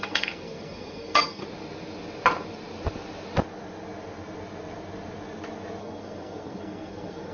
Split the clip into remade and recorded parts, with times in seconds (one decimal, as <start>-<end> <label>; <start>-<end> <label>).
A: 0.0-1.4 remade; 1.4-5.8 recorded; 5.8-7.3 remade